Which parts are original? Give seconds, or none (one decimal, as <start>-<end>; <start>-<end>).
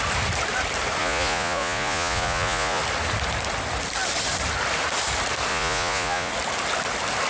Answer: 0.0-1.0; 2.8-5.5; 6.3-7.3